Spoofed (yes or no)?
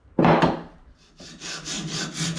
no